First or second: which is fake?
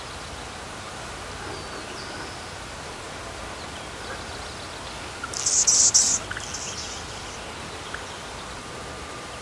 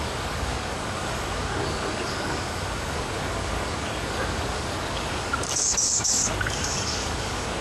second